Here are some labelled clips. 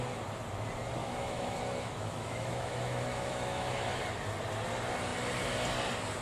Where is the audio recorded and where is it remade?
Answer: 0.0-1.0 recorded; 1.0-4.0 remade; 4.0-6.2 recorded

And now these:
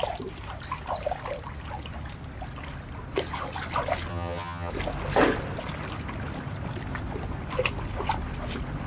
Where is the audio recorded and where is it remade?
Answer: 0.0-4.1 recorded; 4.1-4.7 remade; 4.7-8.9 recorded

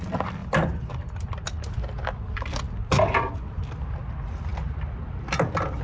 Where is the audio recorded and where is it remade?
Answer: 0.0-5.8 recorded

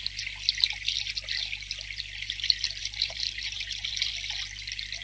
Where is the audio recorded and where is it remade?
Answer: 0.0-2.8 recorded; 2.8-4.1 remade; 4.1-5.0 recorded

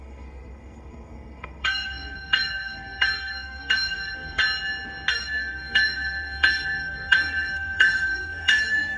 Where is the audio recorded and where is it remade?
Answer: 0.0-4.4 remade; 4.4-5.1 recorded; 5.1-9.0 remade

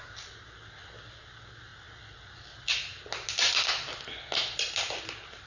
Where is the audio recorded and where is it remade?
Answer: 0.0-5.5 recorded

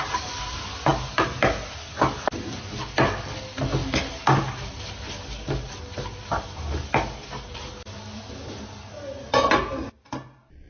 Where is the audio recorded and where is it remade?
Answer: 0.0-10.7 recorded

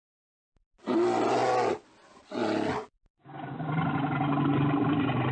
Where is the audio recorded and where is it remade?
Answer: 0.0-5.3 recorded